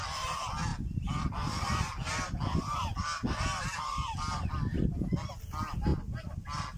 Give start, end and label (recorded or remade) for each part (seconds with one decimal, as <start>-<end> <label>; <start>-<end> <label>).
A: 0.0-6.8 recorded